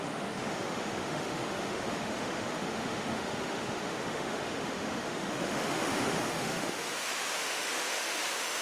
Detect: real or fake fake